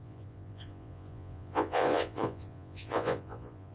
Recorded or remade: remade